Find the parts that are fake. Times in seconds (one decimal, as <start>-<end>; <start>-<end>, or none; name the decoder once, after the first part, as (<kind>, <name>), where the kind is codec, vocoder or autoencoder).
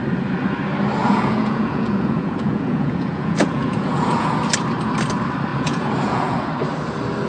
1.0-4.3 (vocoder, Vocos); 5.5-6.5